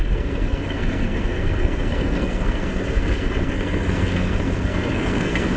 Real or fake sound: fake